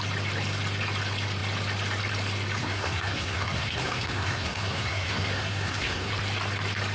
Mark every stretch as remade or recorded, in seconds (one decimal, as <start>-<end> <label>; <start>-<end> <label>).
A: 0.0-2.6 recorded; 2.6-6.1 remade; 6.1-6.9 recorded